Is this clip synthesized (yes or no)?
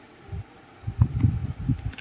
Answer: no